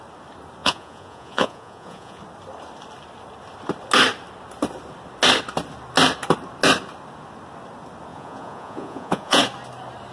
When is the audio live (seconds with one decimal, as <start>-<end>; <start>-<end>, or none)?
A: 0.0-0.6; 2.2-8.1; 9.4-10.1